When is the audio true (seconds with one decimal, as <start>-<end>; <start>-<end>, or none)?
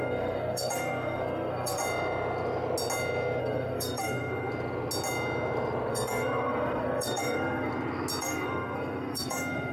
1.8-3.4; 4.5-5.9; 7.7-8.2